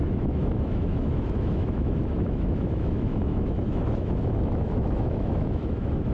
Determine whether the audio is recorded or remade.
remade